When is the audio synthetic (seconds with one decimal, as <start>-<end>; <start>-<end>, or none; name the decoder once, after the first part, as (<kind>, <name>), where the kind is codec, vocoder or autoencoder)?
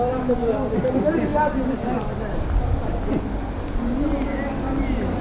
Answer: none